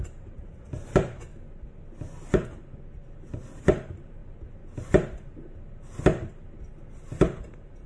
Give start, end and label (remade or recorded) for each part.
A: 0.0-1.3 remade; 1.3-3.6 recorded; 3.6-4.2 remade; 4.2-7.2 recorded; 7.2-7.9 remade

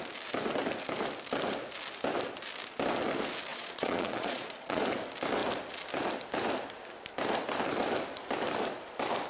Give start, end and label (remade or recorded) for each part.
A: 0.0-3.5 recorded; 3.5-4.8 remade; 4.8-9.3 recorded

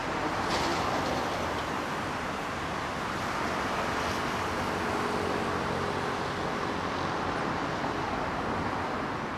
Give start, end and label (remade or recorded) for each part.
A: 0.0-9.4 recorded

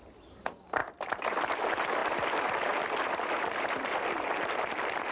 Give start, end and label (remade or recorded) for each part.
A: 0.0-5.1 recorded

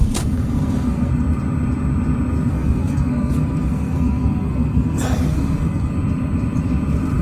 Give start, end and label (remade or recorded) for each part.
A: 0.0-1.1 remade; 1.1-2.5 recorded; 2.5-5.9 remade; 5.9-7.2 recorded

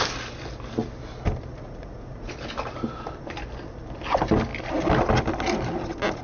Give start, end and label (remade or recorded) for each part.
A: 0.0-1.5 recorded; 1.5-2.3 remade; 2.3-6.2 recorded